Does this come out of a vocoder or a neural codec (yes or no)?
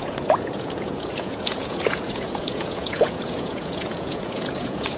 yes